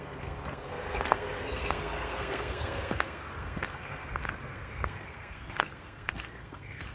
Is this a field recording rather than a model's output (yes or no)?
no